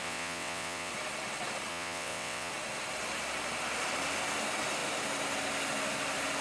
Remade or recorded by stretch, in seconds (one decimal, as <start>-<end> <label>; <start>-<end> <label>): 0.0-0.9 remade; 0.9-1.7 recorded; 1.7-2.5 remade; 2.5-6.4 recorded